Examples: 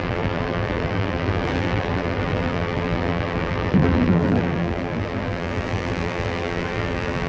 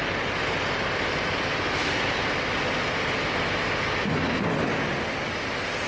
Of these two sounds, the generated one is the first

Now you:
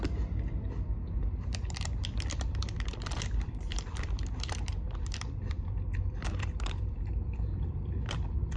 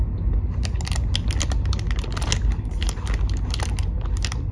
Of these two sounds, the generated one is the first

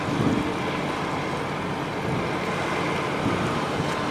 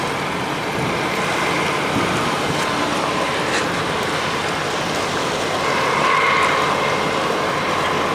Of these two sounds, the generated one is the second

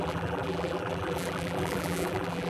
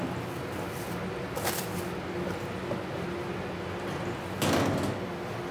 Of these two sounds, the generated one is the first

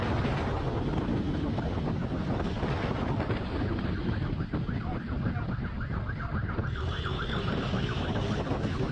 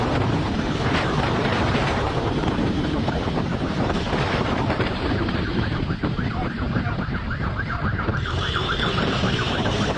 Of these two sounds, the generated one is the second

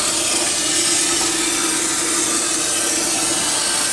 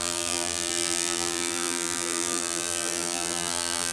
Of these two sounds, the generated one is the second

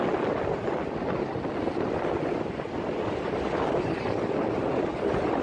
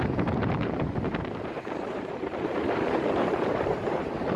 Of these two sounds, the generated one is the second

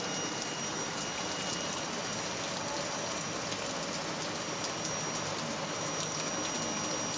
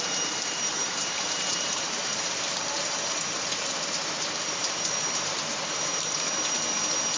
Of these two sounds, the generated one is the second